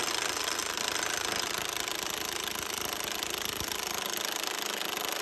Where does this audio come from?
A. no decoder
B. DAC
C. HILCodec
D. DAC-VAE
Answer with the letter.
A